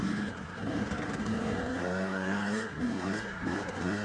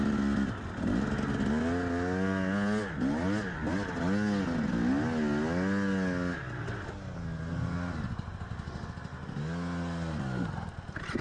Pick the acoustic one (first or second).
second